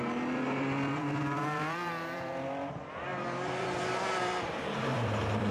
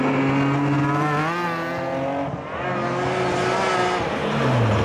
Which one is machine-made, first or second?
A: first